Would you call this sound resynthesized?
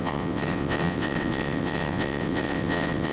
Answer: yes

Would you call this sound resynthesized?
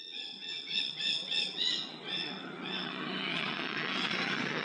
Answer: yes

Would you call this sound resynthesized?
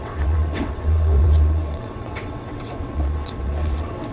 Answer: yes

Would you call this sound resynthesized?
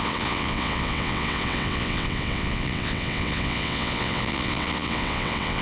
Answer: yes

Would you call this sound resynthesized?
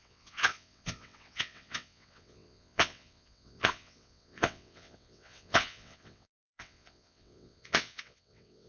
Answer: yes